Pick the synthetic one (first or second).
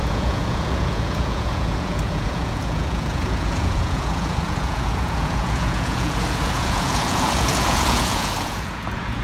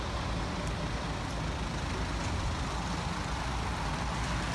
first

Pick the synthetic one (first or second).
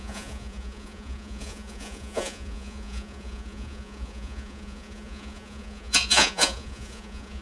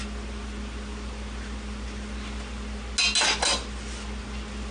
first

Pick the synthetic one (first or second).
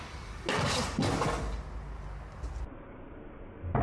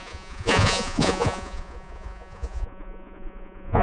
second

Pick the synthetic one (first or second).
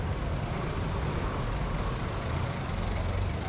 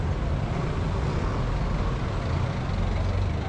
first